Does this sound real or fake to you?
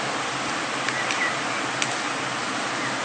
real